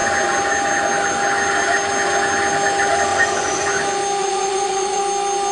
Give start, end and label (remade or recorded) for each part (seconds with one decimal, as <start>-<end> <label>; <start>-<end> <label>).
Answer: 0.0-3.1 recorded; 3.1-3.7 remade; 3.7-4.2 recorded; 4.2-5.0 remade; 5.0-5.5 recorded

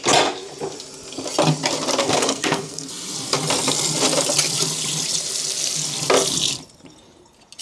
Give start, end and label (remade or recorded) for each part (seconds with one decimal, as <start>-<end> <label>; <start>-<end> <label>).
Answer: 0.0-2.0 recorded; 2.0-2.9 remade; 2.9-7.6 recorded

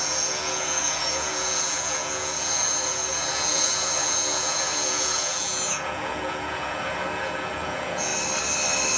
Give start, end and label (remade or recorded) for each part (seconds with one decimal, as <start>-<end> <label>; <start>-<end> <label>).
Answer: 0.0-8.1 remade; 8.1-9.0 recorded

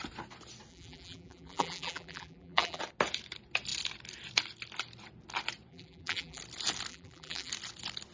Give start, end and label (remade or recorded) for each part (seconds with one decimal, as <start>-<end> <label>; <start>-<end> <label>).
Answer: 0.0-0.7 recorded; 0.7-2.8 remade; 2.8-5.7 recorded; 5.7-6.4 remade; 6.4-6.9 recorded; 6.9-7.5 remade; 7.5-8.1 recorded